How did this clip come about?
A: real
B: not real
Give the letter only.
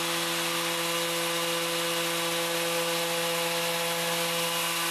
A